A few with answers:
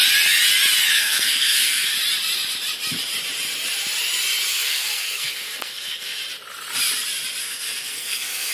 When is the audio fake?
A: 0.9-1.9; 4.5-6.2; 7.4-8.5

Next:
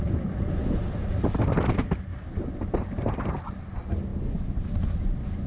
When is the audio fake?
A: none

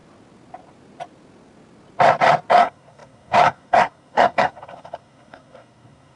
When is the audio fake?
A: 2.5-6.2